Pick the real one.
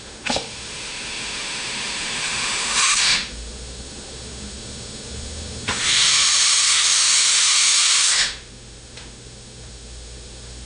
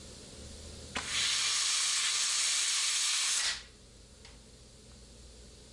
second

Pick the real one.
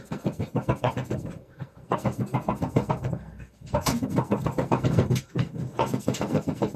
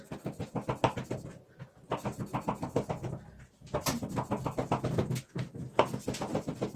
second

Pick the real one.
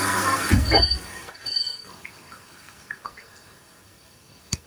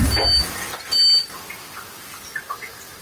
second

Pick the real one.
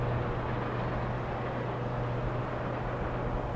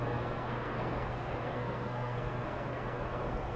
first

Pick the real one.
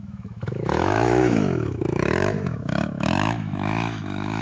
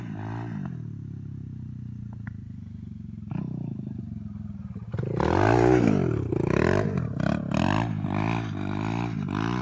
second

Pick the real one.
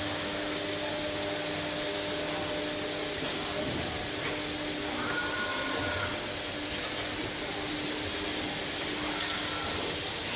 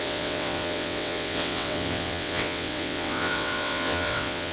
first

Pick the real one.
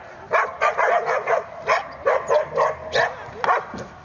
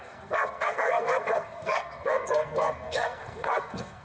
first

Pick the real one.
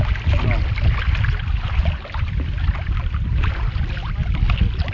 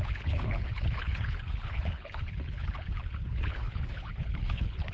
first